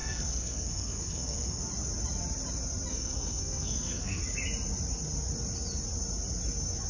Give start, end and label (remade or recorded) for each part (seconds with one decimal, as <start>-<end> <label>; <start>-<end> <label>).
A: 0.0-1.6 remade; 1.6-2.9 recorded; 2.9-4.2 remade; 4.2-6.9 recorded